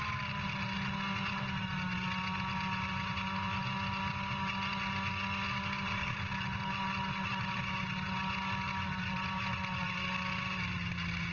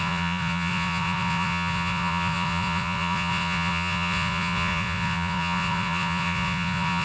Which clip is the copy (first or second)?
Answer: second